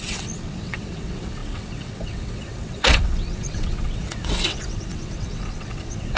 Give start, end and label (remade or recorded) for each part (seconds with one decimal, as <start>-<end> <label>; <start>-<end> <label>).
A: 0.0-6.2 remade